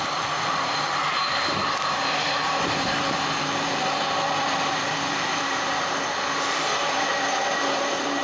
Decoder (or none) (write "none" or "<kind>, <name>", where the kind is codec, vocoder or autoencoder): vocoder, BigVGAN v2